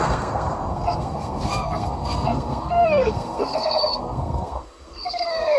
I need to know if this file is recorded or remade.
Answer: remade